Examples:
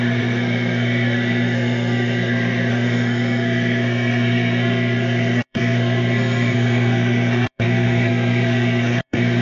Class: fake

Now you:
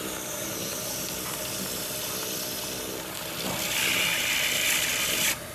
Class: real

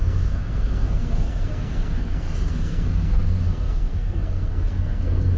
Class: fake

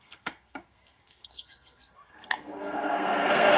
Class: fake